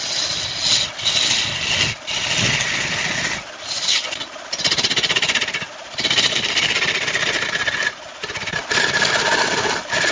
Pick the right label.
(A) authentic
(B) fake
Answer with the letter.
A